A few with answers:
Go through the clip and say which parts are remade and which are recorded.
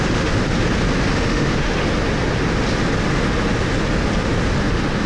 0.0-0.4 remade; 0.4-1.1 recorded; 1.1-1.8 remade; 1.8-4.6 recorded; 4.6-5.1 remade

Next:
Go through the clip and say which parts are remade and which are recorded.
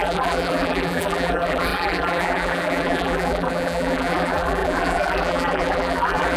0.0-6.4 remade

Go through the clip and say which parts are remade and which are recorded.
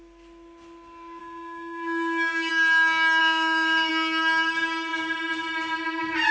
0.0-1.2 recorded; 1.2-2.5 remade; 2.5-3.2 recorded; 3.2-3.9 remade; 3.9-6.3 recorded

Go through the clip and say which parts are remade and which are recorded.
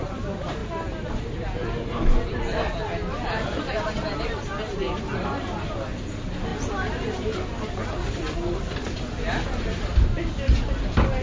0.0-11.2 recorded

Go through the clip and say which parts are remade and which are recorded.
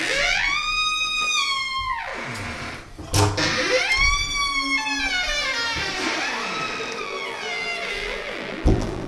0.0-2.1 remade; 2.1-7.0 recorded; 7.0-9.1 remade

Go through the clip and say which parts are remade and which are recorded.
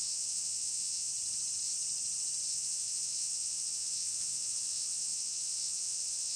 0.0-1.1 remade; 1.1-2.5 recorded; 2.5-6.4 remade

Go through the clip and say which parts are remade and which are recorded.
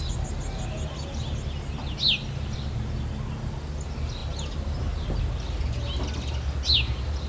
0.0-7.3 recorded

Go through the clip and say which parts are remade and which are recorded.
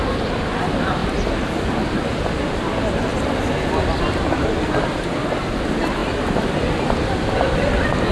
0.0-1.0 recorded; 1.0-1.8 remade; 1.8-8.1 recorded